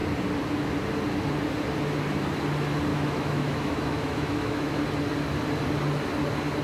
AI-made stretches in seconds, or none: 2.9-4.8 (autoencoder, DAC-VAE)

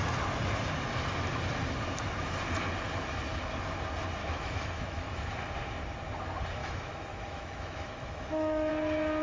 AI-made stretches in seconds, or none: 4.2-5.3 (autoencoder, DAC-VAE); 6.6-8.7

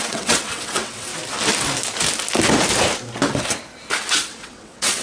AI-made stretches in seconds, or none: 0.0-1.1 (vocoder, WaveNeXt); 4.1-5.0